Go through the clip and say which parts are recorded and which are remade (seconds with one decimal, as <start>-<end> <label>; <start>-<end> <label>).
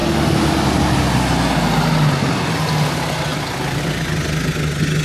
0.0-3.3 recorded; 3.3-3.8 remade; 3.8-5.0 recorded